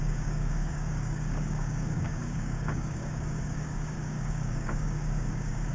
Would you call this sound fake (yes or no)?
yes